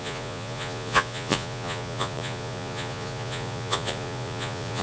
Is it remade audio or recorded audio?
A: remade